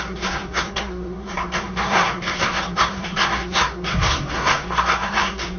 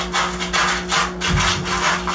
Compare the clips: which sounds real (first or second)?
second